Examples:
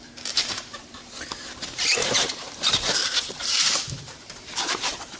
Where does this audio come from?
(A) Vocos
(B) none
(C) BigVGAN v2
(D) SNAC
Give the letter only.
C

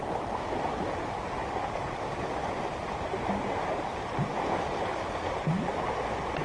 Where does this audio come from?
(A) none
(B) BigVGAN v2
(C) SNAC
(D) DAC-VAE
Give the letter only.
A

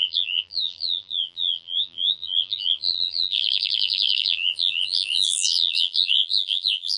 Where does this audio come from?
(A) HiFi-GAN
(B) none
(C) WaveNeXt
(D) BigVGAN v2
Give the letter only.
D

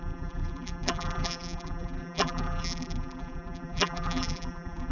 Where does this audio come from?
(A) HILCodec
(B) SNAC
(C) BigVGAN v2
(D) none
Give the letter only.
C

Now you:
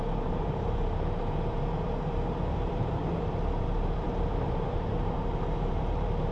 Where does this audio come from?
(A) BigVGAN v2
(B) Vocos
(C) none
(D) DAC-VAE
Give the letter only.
A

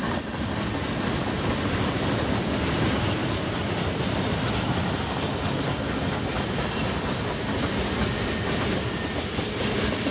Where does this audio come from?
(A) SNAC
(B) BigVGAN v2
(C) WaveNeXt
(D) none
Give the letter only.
B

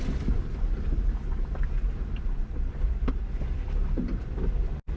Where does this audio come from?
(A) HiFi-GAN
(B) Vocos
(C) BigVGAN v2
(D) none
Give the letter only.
C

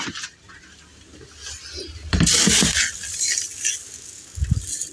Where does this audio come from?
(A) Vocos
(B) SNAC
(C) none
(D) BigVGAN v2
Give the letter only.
C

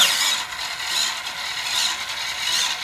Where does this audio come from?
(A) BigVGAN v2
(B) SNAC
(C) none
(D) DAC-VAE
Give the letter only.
C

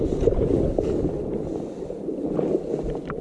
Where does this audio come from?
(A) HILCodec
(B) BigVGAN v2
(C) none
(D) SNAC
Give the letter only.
C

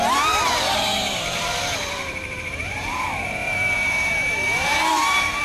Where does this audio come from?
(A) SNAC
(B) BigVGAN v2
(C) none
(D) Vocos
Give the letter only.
B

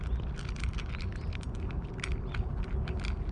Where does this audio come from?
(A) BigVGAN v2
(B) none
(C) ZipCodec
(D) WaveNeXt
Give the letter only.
B